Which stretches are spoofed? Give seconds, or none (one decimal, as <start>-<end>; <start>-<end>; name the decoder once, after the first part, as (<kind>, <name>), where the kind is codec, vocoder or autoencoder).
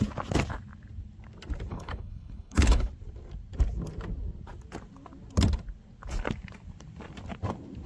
1.7-2.9 (codec, HILCodec)